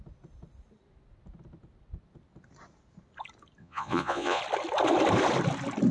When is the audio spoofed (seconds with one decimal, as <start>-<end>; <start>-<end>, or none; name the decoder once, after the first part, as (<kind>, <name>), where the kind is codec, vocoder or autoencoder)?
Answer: 3.6-4.4 (vocoder, Vocos)